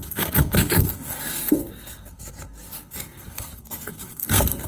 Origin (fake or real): fake